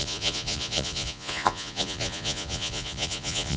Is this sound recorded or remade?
remade